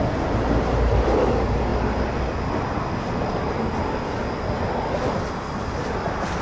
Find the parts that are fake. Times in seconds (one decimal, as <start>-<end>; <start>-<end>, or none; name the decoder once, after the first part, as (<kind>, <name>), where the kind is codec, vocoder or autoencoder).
none